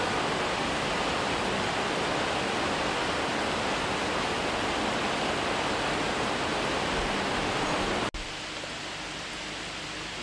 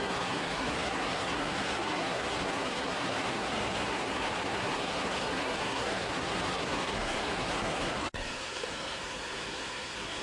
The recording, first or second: first